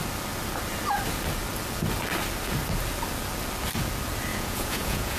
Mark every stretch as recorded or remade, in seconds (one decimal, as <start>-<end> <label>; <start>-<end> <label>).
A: 0.0-4.3 recorded; 4.3-5.2 remade